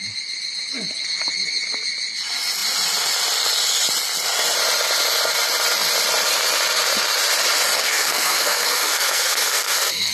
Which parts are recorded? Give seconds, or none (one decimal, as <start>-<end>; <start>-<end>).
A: 0.0-7.8

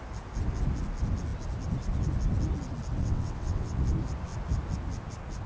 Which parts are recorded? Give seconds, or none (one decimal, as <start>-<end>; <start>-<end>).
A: 0.0-3.0; 3.8-5.5

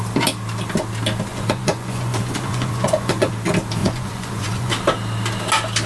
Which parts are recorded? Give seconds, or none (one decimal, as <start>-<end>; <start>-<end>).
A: 0.0-1.3; 3.3-3.8; 4.7-5.9

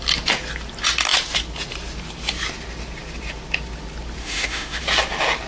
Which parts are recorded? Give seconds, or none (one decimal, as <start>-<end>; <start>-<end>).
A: 0.0-4.2; 4.8-5.5

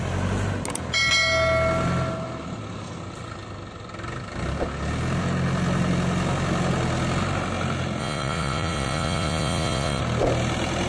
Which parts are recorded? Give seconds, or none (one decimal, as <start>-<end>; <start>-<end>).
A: 0.0-8.0; 10.0-10.9

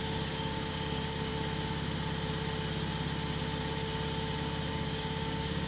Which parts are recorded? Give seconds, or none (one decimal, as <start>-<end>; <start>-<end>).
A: 1.3-4.7

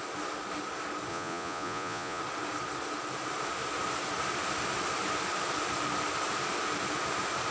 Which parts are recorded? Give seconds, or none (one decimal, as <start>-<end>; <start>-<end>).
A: 0.0-1.1; 2.2-7.5

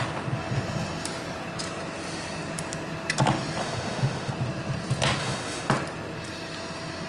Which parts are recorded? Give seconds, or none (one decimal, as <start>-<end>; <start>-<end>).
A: 0.0-3.6; 4.3-5.2; 5.7-7.1